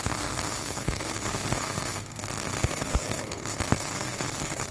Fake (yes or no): yes